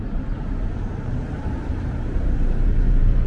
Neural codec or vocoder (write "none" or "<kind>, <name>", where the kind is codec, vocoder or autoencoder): vocoder, BigVGAN v2